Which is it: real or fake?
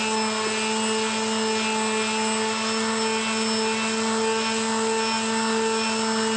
real